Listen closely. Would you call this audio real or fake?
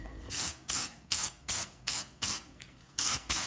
fake